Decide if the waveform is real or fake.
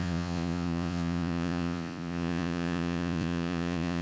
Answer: fake